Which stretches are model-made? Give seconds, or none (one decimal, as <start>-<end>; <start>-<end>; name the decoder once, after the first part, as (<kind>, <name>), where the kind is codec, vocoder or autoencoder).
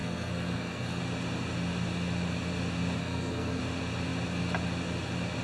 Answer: 0.0-1.0 (codec, SNAC); 3.0-3.6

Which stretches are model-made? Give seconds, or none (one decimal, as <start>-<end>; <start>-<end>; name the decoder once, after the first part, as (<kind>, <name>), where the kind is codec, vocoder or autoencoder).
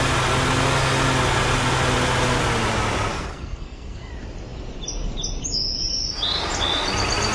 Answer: 3.1-4.1 (codec, SNAC)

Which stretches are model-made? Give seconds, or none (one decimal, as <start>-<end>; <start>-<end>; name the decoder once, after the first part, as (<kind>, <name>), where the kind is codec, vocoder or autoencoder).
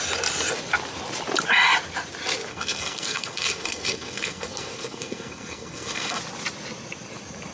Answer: 2.5-6.2 (codec, SNAC)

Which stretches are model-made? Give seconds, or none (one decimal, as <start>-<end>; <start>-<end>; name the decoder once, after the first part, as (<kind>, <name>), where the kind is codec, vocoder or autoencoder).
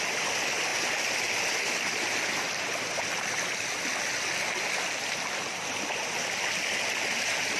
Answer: none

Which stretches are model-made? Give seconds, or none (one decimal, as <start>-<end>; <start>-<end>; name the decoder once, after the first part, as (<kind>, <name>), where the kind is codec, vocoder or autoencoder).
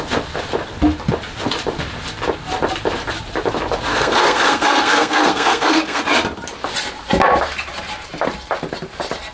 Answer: 3.9-6.0 (codec, SNAC)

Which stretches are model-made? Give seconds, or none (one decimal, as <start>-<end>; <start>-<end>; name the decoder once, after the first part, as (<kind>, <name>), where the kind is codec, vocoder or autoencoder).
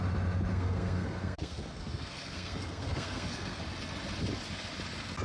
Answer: 0.5-3.6 (codec, SNAC)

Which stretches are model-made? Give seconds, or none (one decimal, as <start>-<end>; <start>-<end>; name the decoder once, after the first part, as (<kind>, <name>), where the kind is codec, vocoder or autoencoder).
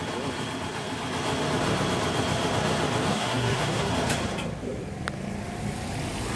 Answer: 3.1-3.9 (codec, SNAC)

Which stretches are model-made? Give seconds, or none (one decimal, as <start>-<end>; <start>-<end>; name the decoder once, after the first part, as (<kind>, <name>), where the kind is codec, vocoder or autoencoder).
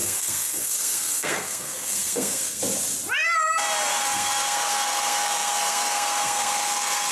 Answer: 0.0-2.6 (codec, SNAC); 3.9-7.1